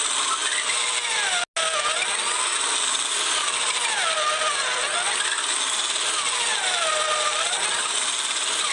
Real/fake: real